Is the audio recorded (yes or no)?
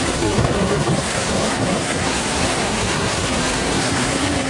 no